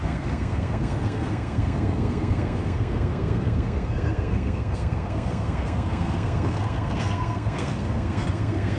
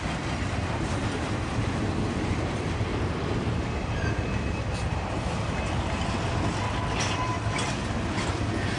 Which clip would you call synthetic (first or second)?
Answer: first